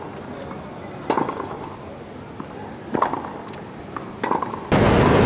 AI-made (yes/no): no